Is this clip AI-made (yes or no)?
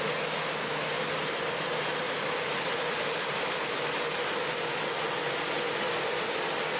no